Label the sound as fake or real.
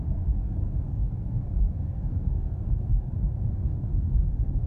fake